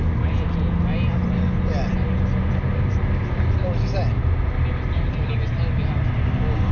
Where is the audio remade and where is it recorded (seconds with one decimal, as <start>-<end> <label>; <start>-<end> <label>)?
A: 0.0-6.7 recorded